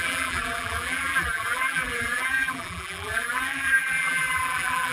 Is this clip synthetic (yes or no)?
yes